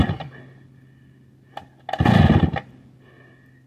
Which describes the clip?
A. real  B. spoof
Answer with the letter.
A